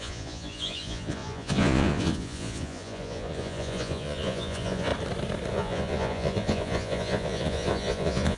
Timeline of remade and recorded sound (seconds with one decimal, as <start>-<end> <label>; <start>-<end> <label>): 0.0-4.9 remade; 4.9-5.5 recorded; 5.5-8.4 remade